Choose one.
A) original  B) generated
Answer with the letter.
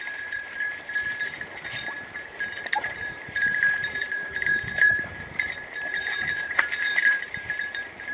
B